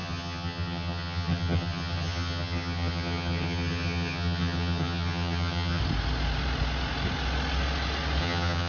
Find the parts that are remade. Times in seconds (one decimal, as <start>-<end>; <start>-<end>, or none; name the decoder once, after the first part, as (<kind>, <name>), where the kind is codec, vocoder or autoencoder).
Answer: 0.0-5.8 (vocoder, HiFi-GAN); 8.2-8.7